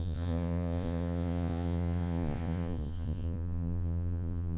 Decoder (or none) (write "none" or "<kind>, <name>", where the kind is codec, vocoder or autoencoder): vocoder, Vocos